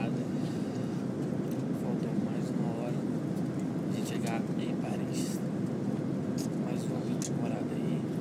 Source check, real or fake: real